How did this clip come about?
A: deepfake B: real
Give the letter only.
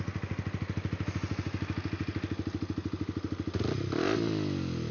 B